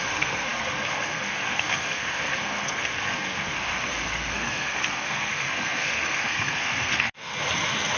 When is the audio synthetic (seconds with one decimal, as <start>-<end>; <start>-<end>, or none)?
0.0-7.3